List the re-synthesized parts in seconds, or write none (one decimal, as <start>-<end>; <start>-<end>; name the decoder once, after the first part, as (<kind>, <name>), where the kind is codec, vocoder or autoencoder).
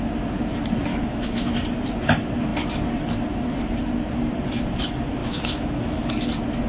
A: 0.9-1.5 (autoencoder, DAC-VAE); 5.2-6.1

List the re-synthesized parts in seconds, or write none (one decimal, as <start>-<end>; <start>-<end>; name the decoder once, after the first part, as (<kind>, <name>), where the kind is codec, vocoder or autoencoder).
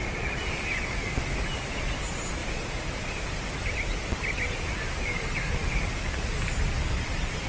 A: none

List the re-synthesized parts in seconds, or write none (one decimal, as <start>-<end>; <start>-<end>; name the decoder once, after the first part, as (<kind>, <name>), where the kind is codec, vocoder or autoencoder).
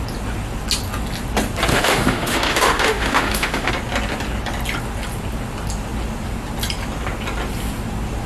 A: 1.7-3.7 (autoencoder, DAC-VAE)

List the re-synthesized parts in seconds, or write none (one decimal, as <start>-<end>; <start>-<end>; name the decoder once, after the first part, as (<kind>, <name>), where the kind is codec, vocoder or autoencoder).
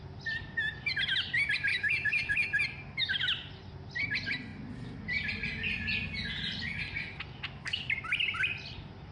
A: 1.7-2.6 (autoencoder, DAC-VAE)